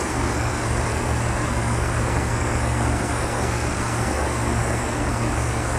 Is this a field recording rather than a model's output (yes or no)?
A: no